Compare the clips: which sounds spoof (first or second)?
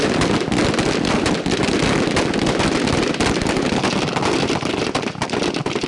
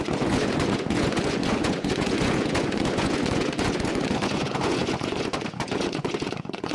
second